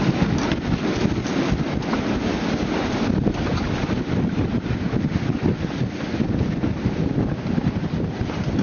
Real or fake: real